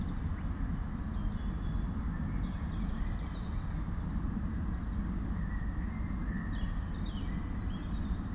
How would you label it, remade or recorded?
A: recorded